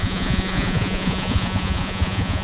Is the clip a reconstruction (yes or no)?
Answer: yes